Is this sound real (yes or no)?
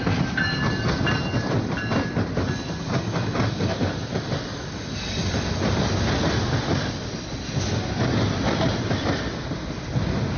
yes